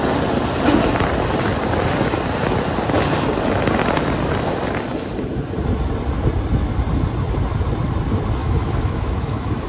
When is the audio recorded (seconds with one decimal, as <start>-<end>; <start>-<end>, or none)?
0.0-8.4